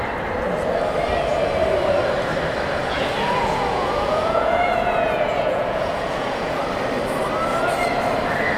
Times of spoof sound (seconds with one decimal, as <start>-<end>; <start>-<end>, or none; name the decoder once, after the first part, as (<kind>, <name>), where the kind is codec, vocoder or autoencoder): 2.8-6.6 (vocoder, Vocos)